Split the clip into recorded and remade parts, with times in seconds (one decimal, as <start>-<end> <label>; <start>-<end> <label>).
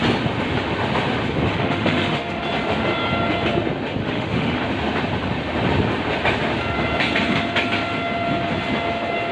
0.0-1.5 recorded; 1.5-2.4 remade; 2.4-4.0 recorded; 4.0-4.6 remade; 4.6-9.3 recorded